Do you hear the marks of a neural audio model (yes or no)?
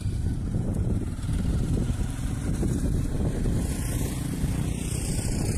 yes